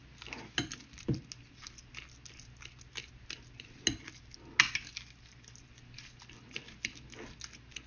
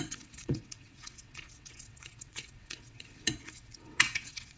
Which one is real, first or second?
first